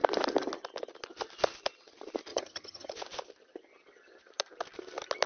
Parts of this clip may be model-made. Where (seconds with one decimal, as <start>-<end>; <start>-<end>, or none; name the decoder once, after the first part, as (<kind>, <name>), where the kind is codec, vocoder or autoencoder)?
2.3-2.9 (vocoder, HiFi-GAN)